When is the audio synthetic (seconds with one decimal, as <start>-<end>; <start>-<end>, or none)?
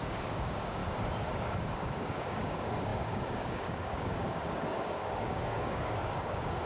0.0-0.8; 1.6-6.7